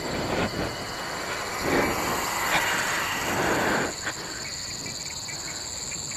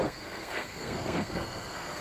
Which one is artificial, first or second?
second